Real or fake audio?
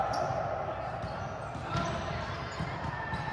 real